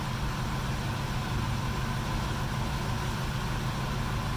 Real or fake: real